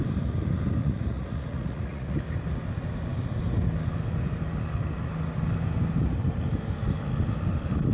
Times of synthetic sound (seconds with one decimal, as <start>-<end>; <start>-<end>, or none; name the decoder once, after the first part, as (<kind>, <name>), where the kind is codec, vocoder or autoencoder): 0.8-2.2 (vocoder, Vocos)